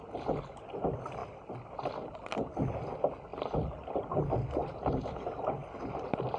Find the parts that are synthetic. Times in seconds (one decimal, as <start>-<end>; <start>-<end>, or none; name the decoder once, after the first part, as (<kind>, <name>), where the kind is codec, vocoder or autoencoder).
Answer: none